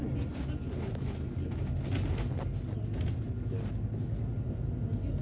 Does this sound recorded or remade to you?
recorded